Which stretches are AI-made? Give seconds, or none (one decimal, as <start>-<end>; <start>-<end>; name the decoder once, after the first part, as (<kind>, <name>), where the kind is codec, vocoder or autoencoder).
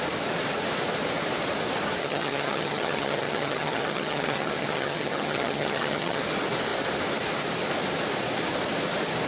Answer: 2.0-6.2 (vocoder, HiFi-GAN)